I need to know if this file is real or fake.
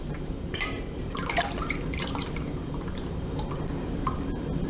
fake